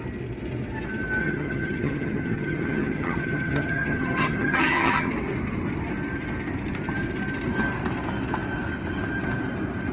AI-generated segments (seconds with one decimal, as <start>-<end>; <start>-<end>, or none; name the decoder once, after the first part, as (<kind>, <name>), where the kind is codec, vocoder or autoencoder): 1.2-5.1 (vocoder, HiFi-GAN)